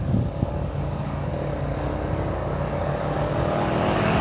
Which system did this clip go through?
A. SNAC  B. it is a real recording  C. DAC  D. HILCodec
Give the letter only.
C